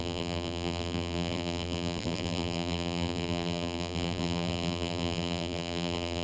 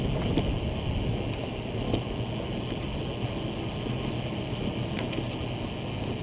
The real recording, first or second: second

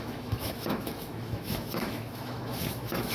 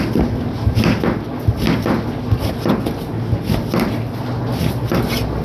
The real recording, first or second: second